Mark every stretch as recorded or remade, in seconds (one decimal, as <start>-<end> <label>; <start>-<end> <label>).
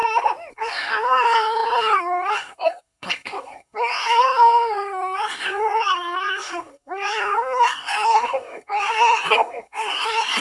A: 0.0-0.5 recorded; 0.5-10.4 remade